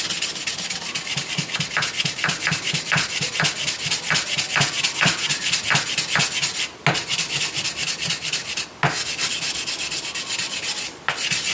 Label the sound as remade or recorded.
recorded